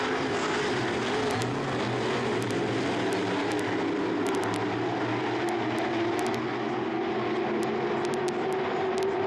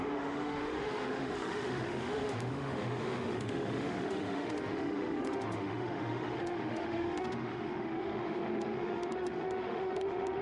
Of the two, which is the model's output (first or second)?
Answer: second